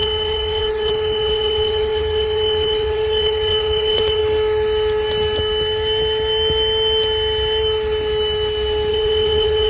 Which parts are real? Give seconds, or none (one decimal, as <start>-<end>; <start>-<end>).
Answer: 4.2-8.9